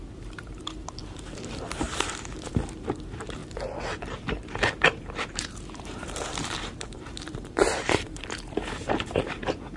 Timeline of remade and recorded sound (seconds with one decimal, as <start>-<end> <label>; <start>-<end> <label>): 0.0-3.4 remade; 3.4-3.9 recorded; 3.9-9.8 remade